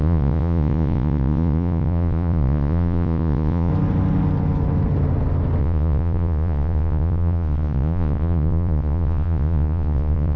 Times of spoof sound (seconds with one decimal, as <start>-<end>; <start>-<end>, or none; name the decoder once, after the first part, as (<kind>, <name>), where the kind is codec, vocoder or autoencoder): 0.0-3.7 (vocoder, Vocos); 5.6-10.4